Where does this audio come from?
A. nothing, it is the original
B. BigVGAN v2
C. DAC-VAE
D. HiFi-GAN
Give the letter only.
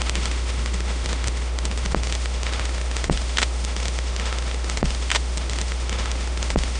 C